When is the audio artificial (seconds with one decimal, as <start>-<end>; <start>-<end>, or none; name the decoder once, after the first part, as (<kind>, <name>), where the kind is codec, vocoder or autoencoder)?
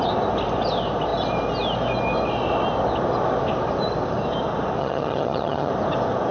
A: 4.8-5.7 (vocoder, HiFi-GAN)